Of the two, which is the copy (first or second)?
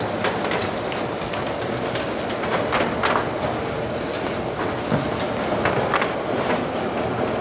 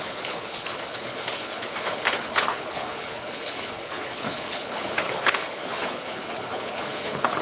second